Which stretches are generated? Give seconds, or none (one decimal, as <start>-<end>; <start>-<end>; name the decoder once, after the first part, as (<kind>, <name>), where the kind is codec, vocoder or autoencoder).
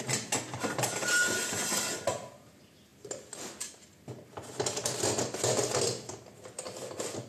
none